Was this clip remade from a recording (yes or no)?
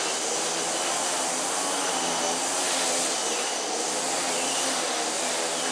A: no